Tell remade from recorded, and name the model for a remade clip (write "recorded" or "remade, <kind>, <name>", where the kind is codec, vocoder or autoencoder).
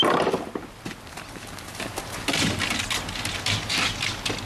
recorded